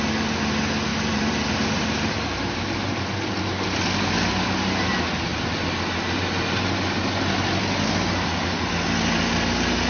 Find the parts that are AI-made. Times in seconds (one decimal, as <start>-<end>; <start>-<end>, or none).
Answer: 0.9-3.4